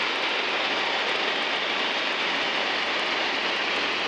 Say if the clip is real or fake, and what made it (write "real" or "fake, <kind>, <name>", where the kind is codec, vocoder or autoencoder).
real